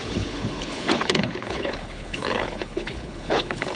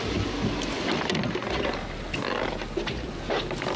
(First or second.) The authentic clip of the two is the second